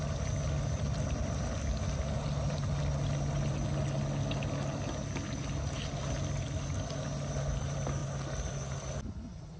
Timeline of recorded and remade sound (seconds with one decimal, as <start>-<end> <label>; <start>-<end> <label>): 0.0-9.6 recorded